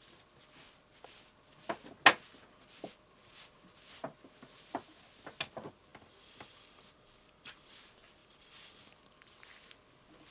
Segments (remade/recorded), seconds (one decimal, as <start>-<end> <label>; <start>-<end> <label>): 0.0-5.9 recorded; 5.9-7.8 remade; 7.8-8.2 recorded; 8.2-8.9 remade; 8.9-10.3 recorded